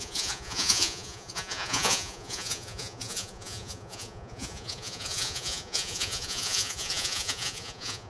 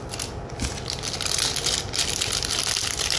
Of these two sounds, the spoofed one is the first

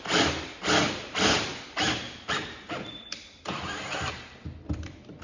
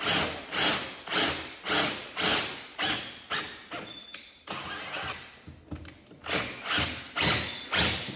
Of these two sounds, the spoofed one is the first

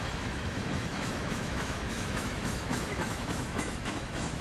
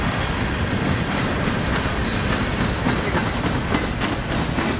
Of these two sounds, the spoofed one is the first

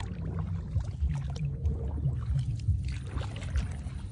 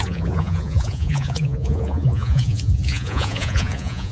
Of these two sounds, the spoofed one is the second